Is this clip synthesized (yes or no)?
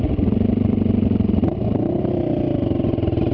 no